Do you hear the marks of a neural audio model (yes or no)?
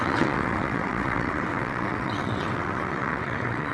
yes